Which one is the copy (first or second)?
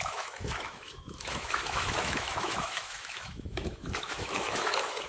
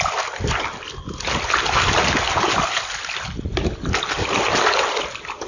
first